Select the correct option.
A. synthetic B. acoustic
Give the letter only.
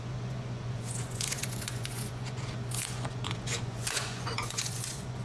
A